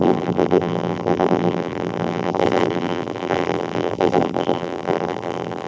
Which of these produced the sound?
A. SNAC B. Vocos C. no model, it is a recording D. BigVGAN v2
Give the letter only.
D